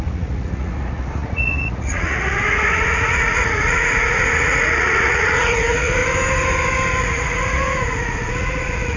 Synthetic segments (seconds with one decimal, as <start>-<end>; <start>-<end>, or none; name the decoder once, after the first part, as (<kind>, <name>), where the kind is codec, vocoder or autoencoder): 0.0-6.0 (vocoder, Vocos); 7.0-9.0